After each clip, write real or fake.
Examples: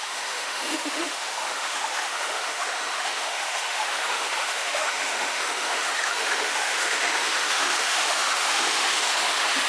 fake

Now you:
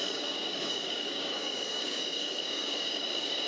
fake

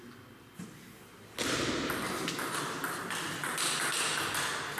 real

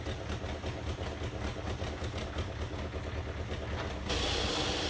real